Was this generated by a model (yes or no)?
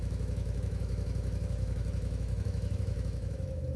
yes